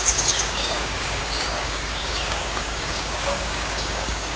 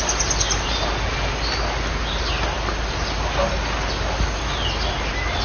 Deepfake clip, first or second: first